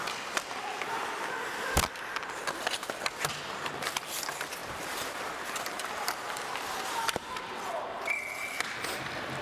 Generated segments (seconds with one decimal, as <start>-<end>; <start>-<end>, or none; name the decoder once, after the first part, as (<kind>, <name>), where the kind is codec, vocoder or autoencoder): 4.6-7.3 (vocoder, BigVGAN v2)